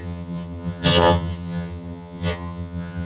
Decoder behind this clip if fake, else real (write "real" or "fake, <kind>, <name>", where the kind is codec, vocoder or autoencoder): fake, vocoder, HiFi-GAN